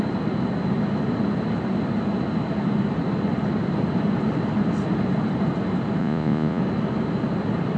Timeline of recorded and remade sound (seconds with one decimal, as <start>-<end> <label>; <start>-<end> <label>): 0.0-6.0 recorded; 6.0-6.6 remade; 6.6-7.8 recorded